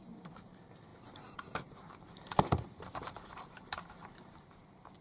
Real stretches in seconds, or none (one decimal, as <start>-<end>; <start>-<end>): none